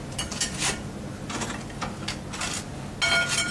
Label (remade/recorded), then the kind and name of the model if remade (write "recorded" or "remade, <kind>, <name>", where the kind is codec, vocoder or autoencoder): recorded